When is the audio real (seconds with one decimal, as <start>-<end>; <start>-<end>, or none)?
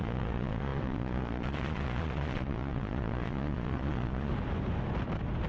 4.3-5.5